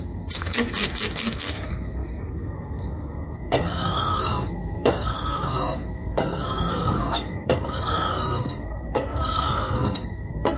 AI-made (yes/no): yes